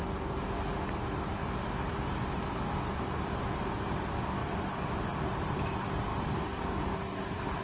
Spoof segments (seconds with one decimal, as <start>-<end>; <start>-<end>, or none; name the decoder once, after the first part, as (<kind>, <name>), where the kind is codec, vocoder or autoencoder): 1.4-2.0 (vocoder, BigVGAN v2)